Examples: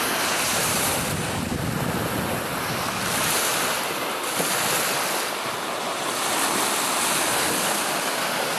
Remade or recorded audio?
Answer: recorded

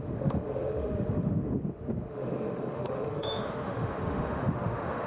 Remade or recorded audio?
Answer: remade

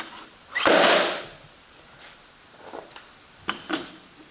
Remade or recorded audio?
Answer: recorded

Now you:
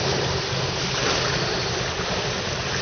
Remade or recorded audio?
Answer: recorded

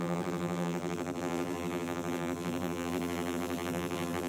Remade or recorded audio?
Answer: remade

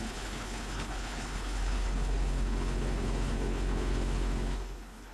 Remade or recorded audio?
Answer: remade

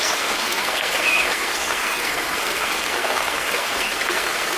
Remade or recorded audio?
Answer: remade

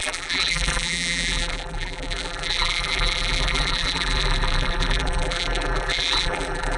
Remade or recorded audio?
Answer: remade